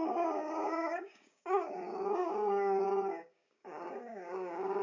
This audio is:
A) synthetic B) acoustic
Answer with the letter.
A